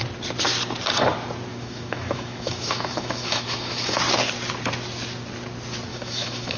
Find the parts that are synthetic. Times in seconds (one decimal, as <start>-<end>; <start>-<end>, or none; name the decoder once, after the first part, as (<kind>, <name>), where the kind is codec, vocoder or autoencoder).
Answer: 1.5-4.0 (autoencoder, DAC-VAE); 5.9-6.6